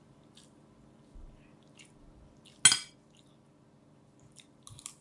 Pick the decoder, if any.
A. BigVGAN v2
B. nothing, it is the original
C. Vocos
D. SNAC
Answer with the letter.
B